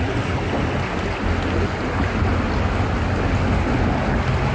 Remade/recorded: recorded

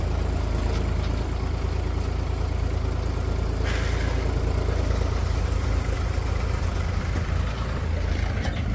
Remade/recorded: recorded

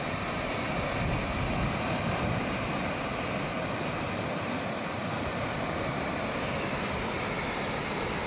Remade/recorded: recorded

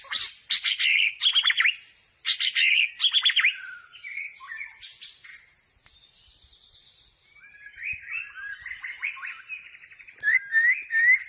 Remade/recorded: recorded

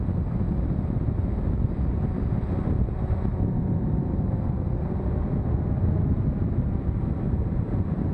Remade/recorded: recorded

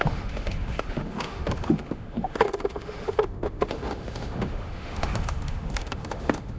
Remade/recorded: remade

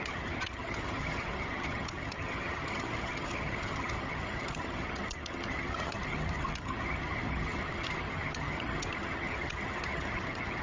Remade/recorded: remade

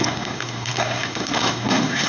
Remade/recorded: remade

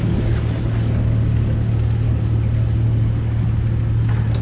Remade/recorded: recorded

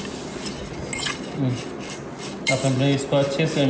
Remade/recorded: recorded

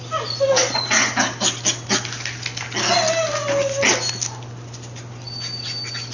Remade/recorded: recorded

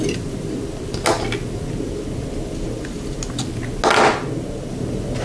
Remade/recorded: recorded